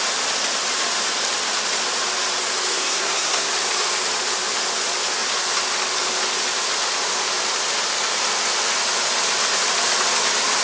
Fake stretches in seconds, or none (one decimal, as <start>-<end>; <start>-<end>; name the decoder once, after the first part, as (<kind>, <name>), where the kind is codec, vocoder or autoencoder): 2.7-3.5 (codec, SNAC)